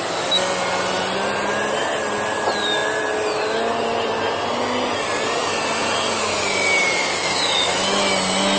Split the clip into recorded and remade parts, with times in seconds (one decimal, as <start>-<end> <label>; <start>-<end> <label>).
0.0-7.0 recorded; 7.0-7.7 remade; 7.7-8.6 recorded